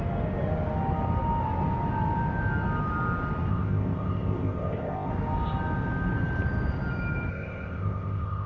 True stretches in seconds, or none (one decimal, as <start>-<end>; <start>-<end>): 0.0-3.5; 5.1-7.3